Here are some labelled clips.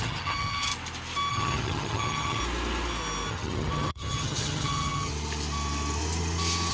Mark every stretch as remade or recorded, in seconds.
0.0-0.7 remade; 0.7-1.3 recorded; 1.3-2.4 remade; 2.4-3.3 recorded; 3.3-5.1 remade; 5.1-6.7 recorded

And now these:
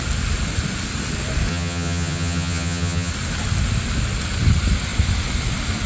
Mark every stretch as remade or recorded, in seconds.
0.0-1.5 recorded; 1.5-3.1 remade; 3.1-5.9 recorded